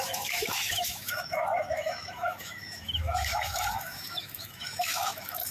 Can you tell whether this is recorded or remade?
remade